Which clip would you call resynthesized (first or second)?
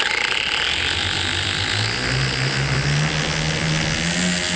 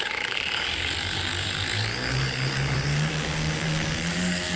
second